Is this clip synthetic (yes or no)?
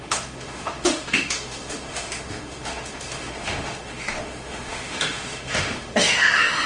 yes